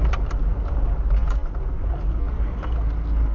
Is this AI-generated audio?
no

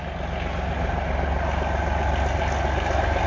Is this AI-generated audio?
no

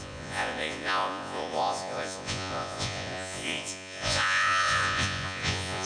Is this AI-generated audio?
yes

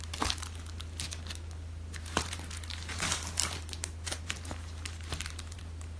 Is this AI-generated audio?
yes